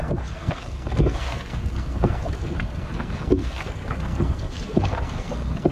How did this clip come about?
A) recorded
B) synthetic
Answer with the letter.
B